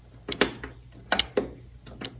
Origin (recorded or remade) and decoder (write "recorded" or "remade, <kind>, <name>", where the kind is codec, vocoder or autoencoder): recorded